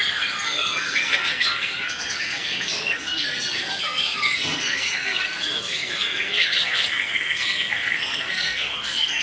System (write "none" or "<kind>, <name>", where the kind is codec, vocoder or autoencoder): codec, SNAC